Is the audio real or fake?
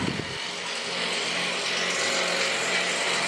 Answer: real